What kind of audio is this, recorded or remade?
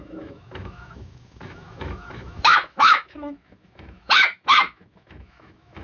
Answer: remade